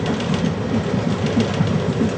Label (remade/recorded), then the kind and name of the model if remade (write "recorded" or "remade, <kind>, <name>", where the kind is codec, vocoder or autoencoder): recorded